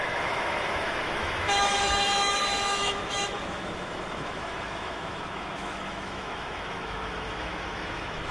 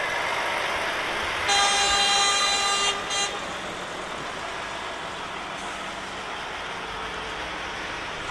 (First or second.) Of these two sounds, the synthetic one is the first